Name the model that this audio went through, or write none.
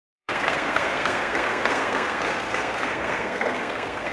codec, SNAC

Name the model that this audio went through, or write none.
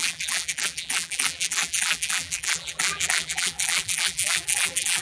vocoder, BigVGAN v2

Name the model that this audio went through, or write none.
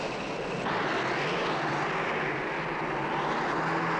none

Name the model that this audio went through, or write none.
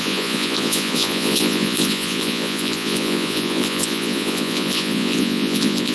vocoder, Vocos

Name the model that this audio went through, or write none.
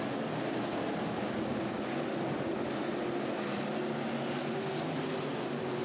none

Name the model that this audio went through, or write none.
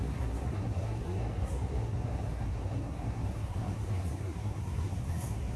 codec, SNAC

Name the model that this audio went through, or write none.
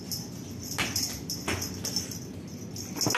none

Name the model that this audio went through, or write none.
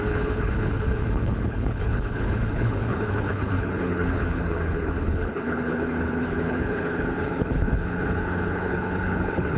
codec, HILCodec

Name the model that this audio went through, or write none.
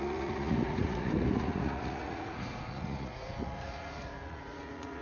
vocoder, Vocos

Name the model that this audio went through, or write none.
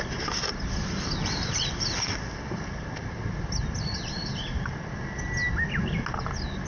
none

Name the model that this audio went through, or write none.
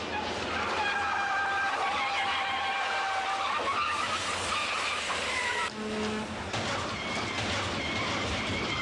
none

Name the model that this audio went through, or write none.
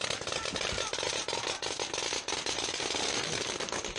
none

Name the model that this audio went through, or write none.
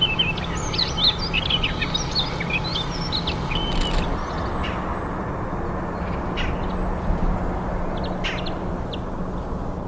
none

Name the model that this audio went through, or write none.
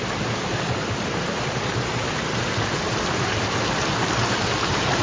vocoder, BigVGAN v2